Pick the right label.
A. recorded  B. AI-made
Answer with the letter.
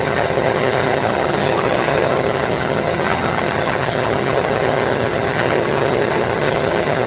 B